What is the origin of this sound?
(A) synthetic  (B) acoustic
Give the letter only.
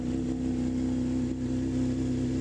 B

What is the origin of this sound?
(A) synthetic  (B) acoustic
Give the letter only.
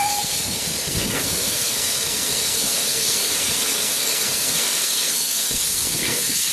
A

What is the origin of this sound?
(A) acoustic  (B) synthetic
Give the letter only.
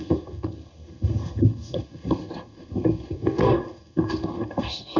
B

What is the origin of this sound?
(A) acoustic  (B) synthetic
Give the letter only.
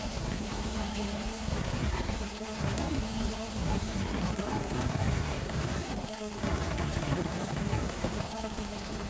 B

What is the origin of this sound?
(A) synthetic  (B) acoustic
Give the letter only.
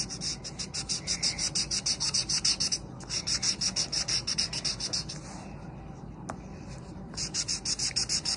B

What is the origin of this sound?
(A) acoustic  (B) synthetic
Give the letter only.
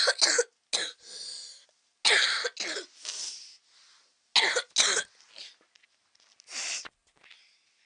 A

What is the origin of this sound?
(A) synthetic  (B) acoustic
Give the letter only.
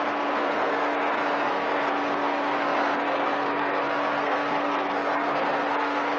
A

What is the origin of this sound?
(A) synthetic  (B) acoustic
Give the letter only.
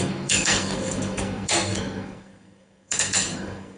A